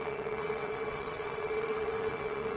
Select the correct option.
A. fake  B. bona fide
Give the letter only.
A